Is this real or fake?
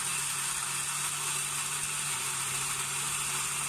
real